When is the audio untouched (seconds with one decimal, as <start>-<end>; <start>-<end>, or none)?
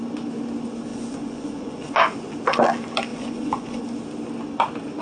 0.0-0.9; 1.9-3.1; 3.8-5.0